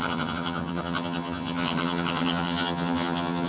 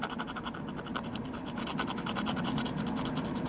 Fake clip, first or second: first